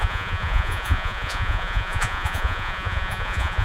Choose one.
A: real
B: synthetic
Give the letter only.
B